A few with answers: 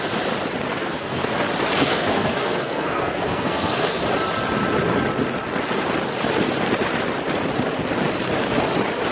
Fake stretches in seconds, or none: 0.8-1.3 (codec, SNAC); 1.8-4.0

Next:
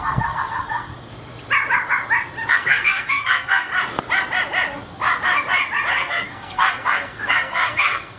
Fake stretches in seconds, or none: 0.0-0.9 (codec, SNAC); 2.5-3.7; 5.9-8.2

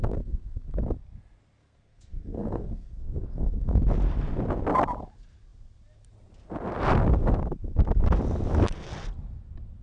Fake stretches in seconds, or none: 0.0-0.8 (codec, SNAC); 1.6-3.8

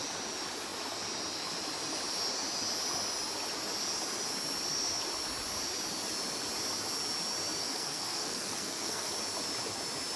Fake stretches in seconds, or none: 7.6-9.1 (codec, SNAC)

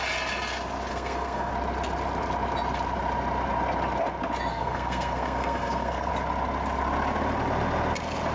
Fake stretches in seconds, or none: 0.9-1.5 (codec, SNAC); 4.5-6.1

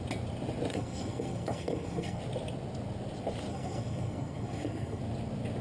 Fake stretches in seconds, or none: 0.7-2.2 (codec, SNAC); 3.5-5.0

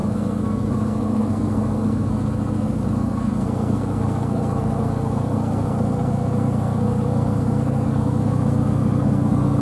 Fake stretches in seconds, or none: 0.0-9.6 (codec, SNAC)

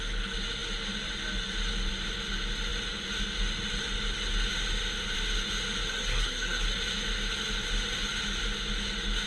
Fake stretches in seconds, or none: 5.9-6.6 (codec, SNAC)